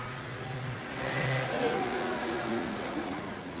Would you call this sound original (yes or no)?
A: no